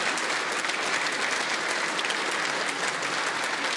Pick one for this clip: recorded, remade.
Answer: recorded